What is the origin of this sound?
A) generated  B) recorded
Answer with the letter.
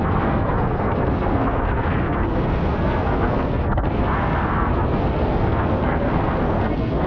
A